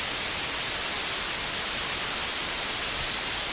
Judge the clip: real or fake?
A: real